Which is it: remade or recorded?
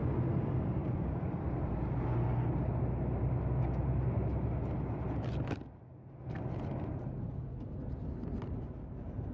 recorded